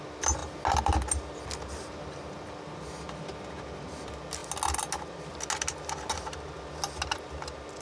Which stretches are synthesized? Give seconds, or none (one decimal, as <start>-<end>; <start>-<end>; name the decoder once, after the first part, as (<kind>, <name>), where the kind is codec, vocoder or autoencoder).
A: none